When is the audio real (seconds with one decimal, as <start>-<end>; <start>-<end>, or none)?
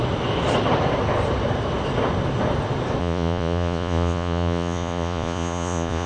0.0-3.0